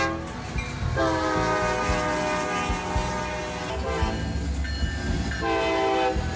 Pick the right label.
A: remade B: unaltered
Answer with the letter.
B